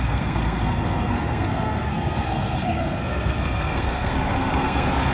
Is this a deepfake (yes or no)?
yes